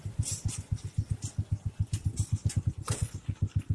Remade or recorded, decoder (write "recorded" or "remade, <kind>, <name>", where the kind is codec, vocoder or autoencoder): recorded